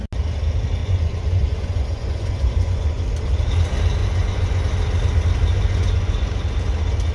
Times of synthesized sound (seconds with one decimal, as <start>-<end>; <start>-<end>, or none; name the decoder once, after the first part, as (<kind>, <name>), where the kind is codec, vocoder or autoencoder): 0.8-3.0 (vocoder, Vocos); 4.0-4.6; 5.5-6.3